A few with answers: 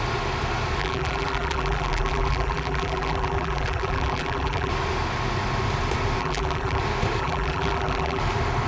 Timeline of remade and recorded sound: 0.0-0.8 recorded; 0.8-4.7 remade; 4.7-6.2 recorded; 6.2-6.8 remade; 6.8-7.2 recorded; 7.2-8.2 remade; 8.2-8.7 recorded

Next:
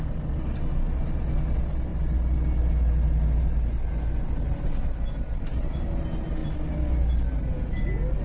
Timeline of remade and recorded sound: 0.0-8.2 recorded

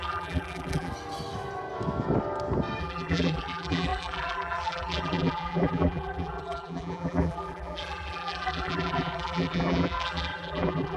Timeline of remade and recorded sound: 0.0-0.9 remade; 0.9-2.8 recorded; 2.8-11.0 remade

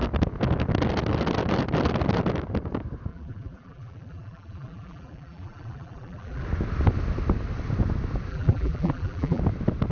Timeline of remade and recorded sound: 0.0-3.1 recorded; 3.1-6.4 remade; 6.4-8.3 recorded; 8.3-9.4 remade; 9.4-9.9 recorded

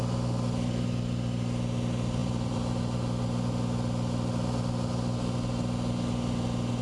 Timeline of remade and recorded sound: 0.0-2.2 recorded; 2.2-2.8 remade; 2.8-6.8 recorded

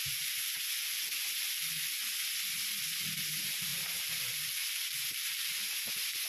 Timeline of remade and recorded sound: 0.0-2.0 remade; 2.0-3.3 recorded; 3.3-6.3 remade